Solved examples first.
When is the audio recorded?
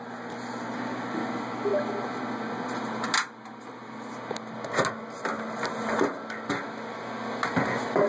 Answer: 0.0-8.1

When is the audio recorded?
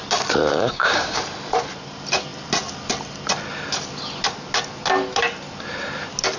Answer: 0.0-0.5; 1.2-6.4